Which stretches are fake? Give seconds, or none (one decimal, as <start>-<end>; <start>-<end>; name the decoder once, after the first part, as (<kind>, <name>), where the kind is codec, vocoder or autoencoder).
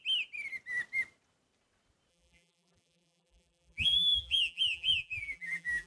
2.1-5.9 (vocoder, BigVGAN v2)